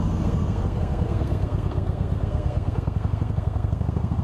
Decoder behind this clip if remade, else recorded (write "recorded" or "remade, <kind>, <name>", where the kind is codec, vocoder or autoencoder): remade, codec, SNAC